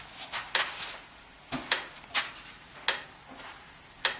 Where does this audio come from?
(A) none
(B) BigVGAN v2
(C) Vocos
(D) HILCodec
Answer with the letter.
A